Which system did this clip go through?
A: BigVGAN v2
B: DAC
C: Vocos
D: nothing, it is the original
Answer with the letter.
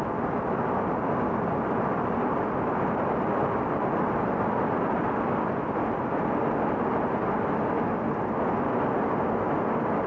D